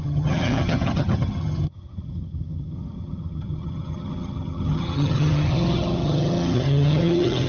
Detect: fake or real fake